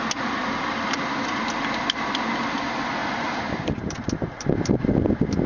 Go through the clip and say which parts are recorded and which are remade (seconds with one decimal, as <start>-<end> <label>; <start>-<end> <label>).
0.0-3.0 recorded; 3.0-4.8 remade; 4.8-5.5 recorded